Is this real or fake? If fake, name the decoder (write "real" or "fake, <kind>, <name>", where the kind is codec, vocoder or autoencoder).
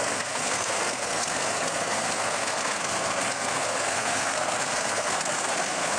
fake, codec, SNAC